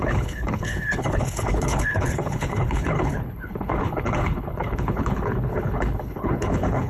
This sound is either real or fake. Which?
fake